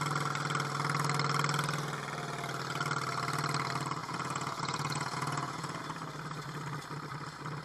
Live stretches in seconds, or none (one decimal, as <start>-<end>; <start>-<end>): 0.0-4.0; 5.8-7.6